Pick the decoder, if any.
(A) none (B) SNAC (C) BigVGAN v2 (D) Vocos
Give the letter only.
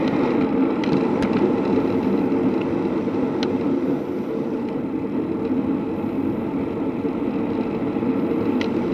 A